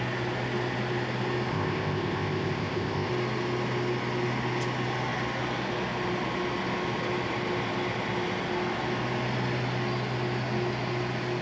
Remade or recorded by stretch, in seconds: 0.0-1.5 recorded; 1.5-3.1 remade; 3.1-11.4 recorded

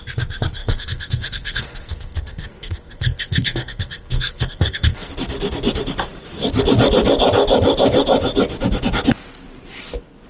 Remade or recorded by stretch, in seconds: 0.0-0.6 recorded; 0.6-5.1 remade; 5.1-10.3 recorded

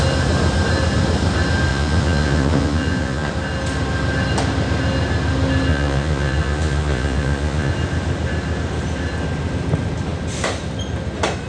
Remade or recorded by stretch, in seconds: 0.0-1.7 recorded; 1.7-3.3 remade; 3.3-5.7 recorded; 5.7-7.7 remade; 7.7-11.5 recorded

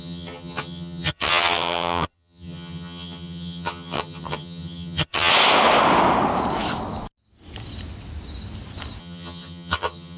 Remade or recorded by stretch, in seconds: 0.0-5.3 remade; 5.3-9.0 recorded; 9.0-10.2 remade

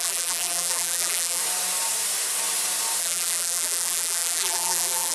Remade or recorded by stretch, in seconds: 0.0-1.4 remade; 1.4-3.0 recorded; 3.0-5.1 remade

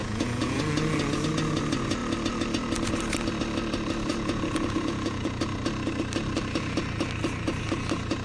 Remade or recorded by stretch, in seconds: 0.0-0.6 remade; 0.6-4.1 recorded; 4.1-5.4 remade; 5.4-8.2 recorded

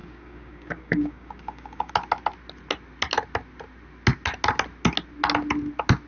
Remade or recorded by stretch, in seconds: 0.0-1.9 remade; 1.9-6.1 recorded